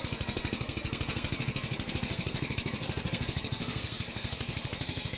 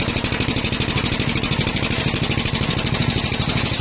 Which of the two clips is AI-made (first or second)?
first